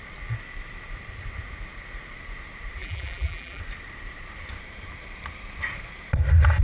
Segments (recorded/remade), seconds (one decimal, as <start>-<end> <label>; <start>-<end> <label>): 0.0-2.8 recorded; 2.8-3.6 remade; 3.6-6.6 recorded